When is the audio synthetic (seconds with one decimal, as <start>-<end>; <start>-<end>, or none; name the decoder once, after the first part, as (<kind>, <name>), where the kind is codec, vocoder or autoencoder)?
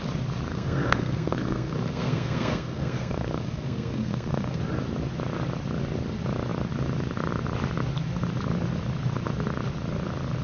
0.5-4.6 (codec, SNAC)